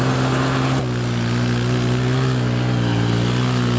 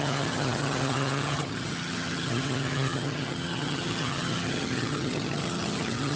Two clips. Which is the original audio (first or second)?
first